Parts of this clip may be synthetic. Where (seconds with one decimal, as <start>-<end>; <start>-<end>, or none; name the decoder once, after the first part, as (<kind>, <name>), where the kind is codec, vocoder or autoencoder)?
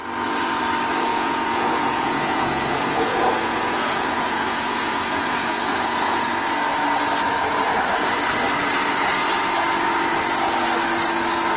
1.1-6.3 (vocoder, Vocos)